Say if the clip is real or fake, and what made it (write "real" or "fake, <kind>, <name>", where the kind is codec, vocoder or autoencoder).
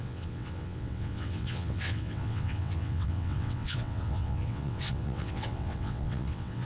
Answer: fake, vocoder, WaveNeXt